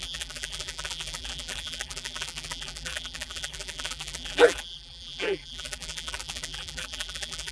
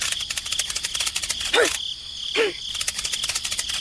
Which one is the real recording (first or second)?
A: second